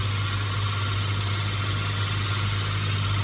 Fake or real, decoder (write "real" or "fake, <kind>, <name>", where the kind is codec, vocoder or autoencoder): real